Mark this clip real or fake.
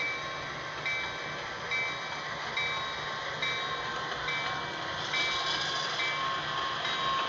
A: real